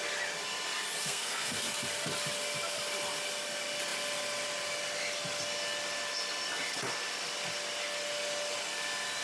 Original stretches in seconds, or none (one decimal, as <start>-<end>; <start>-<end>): 0.0-1.0; 1.6-9.2